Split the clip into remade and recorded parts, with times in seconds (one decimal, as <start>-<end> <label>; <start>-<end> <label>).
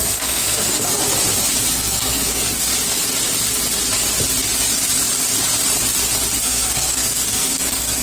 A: 0.0-1.0 remade; 1.0-1.7 recorded; 1.7-2.7 remade; 2.7-6.4 recorded; 6.4-8.0 remade